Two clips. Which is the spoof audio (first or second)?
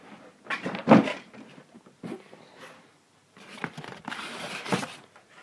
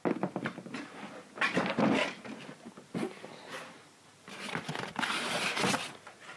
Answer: first